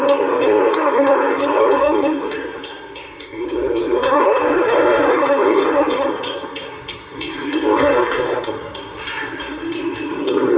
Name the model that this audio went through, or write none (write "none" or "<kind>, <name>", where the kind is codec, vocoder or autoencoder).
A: codec, SNAC